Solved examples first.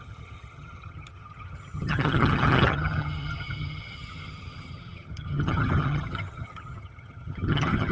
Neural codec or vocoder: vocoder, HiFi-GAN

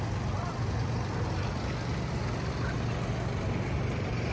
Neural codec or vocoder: none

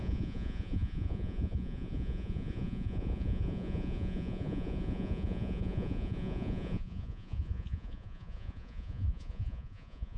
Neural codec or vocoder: vocoder, Vocos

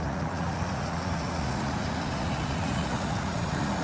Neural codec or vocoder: vocoder, Vocos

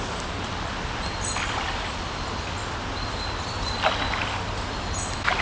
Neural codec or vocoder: none